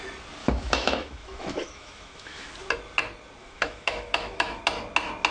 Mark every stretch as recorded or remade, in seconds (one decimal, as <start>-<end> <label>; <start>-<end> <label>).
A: 0.0-0.4 recorded; 0.4-2.5 remade; 2.5-3.4 recorded; 3.4-4.6 remade; 4.6-5.3 recorded